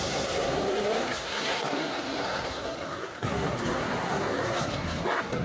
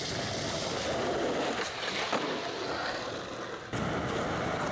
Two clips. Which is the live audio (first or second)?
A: second